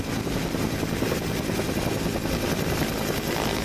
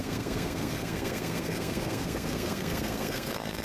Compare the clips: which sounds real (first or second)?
first